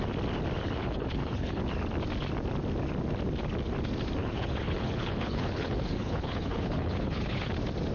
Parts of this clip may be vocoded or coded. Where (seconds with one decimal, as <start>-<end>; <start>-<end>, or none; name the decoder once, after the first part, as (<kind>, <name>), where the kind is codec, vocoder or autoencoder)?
0.8-1.6 (codec, HILCodec); 4.2-7.5